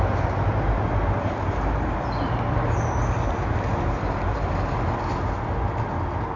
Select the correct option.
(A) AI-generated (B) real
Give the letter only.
B